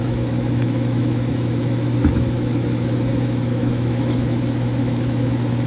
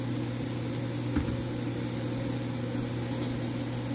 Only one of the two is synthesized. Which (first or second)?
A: first